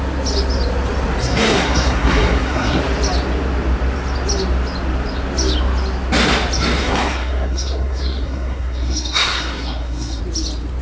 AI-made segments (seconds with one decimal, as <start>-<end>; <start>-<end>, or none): 1.2-2.8; 6.8-10.2

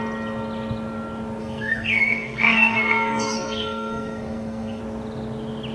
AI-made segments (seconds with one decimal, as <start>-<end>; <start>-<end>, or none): 1.4-4.8

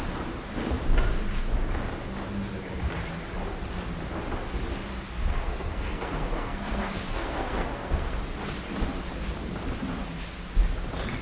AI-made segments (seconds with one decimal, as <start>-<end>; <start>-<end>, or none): 5.3-8.2

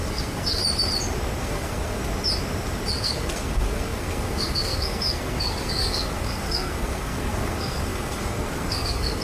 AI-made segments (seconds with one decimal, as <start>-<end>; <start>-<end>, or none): 0.0-0.6; 1.4-2.0; 2.9-9.2

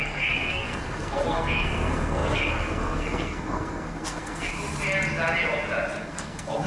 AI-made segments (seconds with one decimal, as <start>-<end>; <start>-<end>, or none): 0.0-4.5; 6.0-6.7

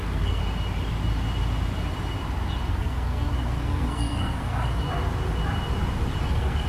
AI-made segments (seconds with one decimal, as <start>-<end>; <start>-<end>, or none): 0.0-0.4; 2.7-4.8; 6.2-6.7

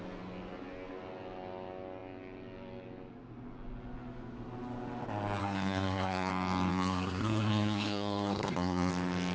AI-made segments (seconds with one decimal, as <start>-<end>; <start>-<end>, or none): 5.4-6.3; 6.7-8.9

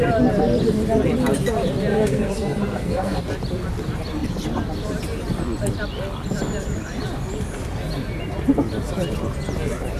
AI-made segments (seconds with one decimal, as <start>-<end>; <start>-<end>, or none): 1.9-3.2